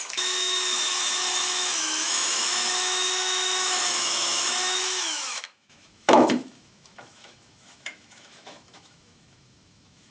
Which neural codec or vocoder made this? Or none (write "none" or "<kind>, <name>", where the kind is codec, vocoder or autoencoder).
autoencoder, DAC-VAE